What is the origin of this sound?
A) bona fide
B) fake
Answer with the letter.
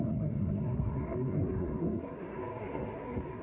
B